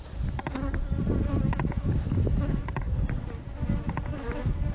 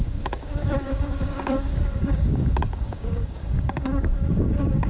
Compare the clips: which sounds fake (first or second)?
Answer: second